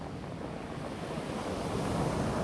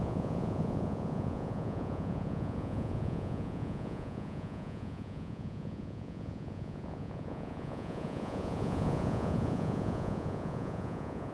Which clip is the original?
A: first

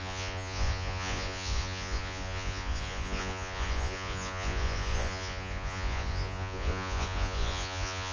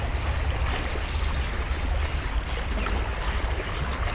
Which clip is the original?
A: second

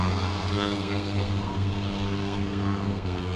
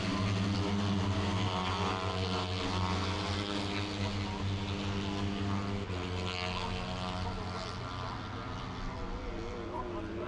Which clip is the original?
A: second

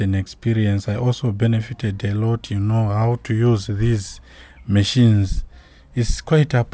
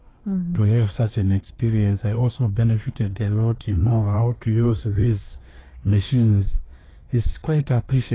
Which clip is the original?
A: first